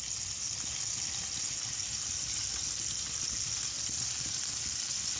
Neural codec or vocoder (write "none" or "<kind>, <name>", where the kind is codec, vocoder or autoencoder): none